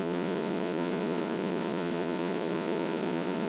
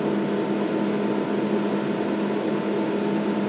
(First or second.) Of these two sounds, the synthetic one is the first